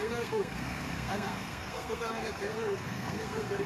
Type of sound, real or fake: fake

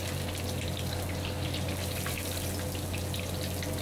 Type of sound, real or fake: real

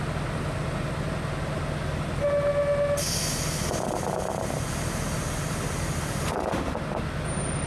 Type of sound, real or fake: real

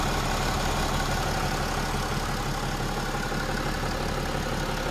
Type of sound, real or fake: real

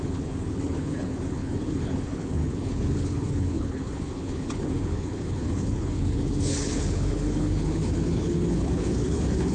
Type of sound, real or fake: fake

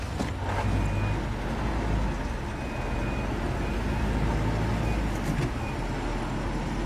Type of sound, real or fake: real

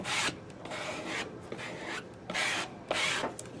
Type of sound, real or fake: real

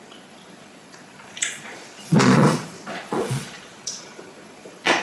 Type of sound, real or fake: fake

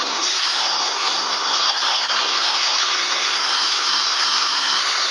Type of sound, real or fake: fake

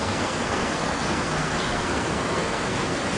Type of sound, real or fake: fake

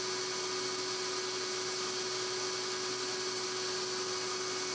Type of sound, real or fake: real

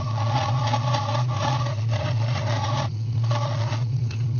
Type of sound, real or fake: fake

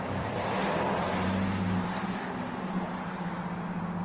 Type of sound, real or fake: fake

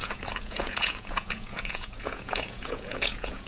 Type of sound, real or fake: fake